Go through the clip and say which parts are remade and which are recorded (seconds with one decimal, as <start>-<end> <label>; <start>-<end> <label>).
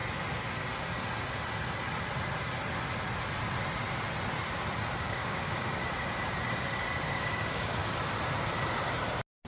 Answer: 0.0-5.0 recorded; 5.0-5.8 remade; 5.8-7.1 recorded; 7.1-7.8 remade; 7.8-9.5 recorded